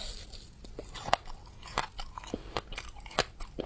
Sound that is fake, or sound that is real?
real